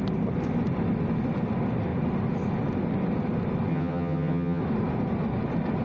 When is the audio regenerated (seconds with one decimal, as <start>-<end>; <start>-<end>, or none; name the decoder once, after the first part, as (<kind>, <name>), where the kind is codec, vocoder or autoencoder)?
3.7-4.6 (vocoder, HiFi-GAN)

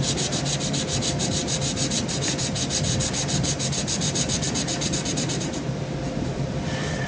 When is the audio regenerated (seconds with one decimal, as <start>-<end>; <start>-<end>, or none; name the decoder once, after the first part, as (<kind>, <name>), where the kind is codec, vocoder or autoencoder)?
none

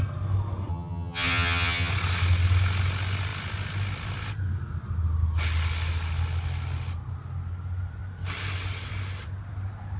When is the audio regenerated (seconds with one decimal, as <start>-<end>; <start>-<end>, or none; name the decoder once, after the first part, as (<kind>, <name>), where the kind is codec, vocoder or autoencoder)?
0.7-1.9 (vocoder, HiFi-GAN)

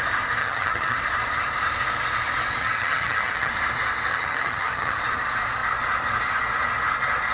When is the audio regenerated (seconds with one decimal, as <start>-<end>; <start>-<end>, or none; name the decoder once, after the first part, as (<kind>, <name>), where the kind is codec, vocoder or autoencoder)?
0.4-1.0 (vocoder, HiFi-GAN); 2.6-3.5; 4.1-5.0

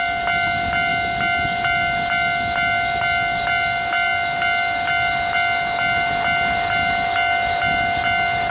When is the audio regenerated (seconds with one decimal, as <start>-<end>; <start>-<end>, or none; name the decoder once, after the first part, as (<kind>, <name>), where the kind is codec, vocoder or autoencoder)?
none